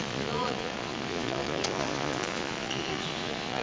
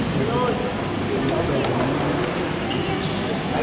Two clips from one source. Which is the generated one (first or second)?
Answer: first